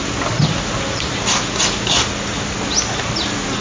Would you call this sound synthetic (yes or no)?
no